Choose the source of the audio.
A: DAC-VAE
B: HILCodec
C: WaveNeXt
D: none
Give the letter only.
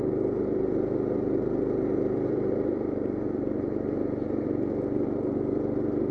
D